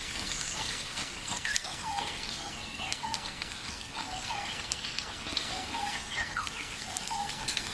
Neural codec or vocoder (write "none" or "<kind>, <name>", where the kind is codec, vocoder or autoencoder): codec, SNAC